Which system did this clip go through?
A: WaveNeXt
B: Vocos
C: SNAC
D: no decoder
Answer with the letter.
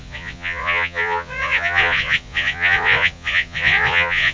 B